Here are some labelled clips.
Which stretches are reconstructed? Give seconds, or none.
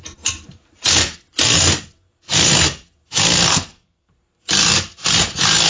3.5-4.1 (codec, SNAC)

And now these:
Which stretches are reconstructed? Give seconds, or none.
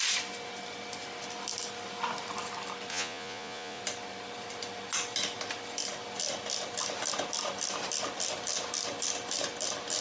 2.9-3.8 (vocoder, Vocos)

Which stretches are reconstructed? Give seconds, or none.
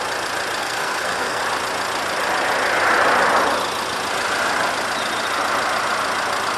0.6-1.4 (codec, SNAC)